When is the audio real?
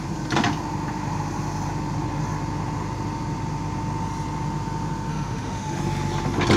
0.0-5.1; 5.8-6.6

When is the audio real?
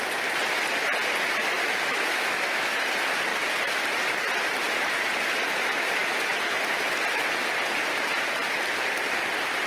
0.0-1.4; 2.9-9.7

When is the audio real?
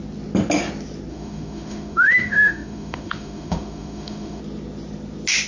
0.0-1.1; 4.4-5.5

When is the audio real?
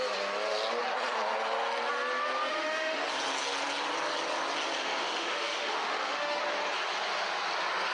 0.0-2.5; 3.0-4.8; 6.4-7.9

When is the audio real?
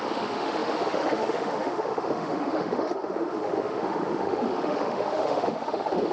none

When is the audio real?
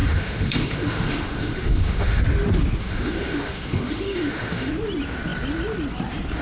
2.2-2.8; 4.7-6.4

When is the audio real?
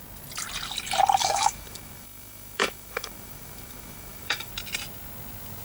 0.0-1.2; 4.5-5.6